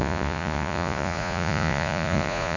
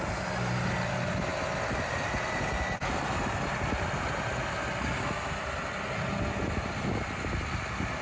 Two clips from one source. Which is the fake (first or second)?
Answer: first